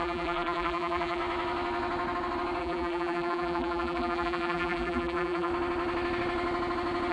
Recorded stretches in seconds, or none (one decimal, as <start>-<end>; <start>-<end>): 1.2-2.6; 5.5-7.1